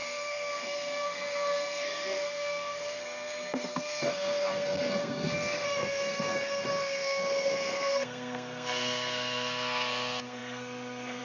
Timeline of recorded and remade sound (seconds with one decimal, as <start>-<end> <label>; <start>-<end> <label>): 0.0-11.2 remade